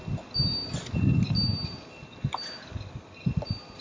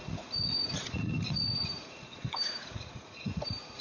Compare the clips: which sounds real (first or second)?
first